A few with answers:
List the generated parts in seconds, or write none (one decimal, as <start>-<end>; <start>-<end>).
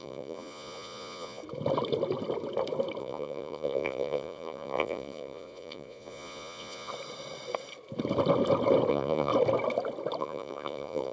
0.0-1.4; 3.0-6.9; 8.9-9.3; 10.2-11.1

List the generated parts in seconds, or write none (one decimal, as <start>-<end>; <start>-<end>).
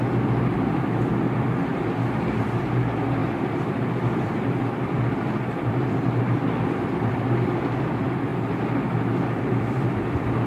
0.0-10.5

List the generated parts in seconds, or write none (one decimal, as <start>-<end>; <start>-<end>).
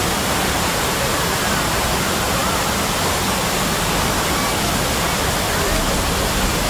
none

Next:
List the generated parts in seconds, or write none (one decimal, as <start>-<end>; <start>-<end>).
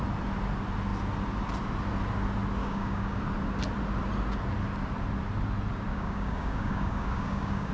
2.6-3.2; 5.9-7.7